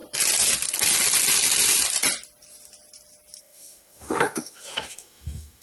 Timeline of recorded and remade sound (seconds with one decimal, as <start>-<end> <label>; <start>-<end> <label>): 0.0-3.4 recorded; 3.4-5.6 remade